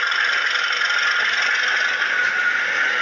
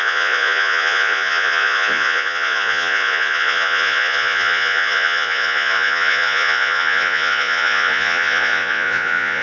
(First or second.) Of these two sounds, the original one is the first